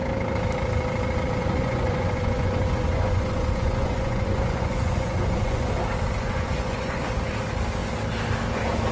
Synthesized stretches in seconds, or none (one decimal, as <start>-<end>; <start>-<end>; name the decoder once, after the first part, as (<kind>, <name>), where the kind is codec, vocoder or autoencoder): 1.4-5.7 (vocoder, Vocos); 6.2-7.0